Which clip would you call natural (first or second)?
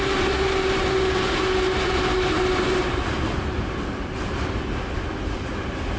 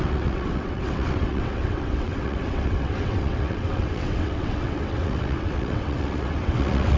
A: first